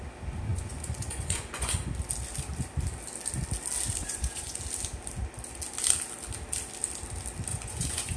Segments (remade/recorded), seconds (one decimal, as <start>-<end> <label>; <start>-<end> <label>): 0.0-0.5 recorded; 0.5-1.9 remade; 1.9-4.0 recorded; 4.0-4.6 remade; 4.6-7.5 recorded; 7.5-8.2 remade